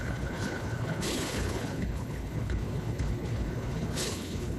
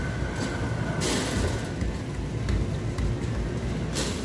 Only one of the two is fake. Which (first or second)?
first